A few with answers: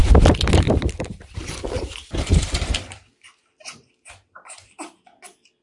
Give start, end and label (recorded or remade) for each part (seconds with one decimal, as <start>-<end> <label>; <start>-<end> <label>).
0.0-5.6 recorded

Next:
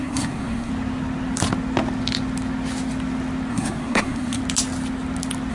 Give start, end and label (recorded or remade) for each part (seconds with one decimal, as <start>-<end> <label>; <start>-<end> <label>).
0.0-0.7 remade; 0.7-3.5 recorded; 3.5-4.4 remade; 4.4-5.5 recorded

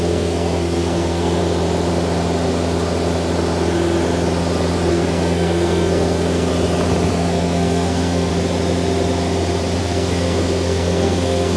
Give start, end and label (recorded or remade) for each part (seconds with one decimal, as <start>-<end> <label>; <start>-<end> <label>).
0.0-1.4 remade; 1.4-4.9 recorded; 4.9-6.5 remade; 6.5-7.1 recorded; 7.1-8.3 remade; 8.3-9.8 recorded; 9.8-11.6 remade